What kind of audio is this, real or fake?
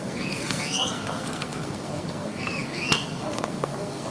fake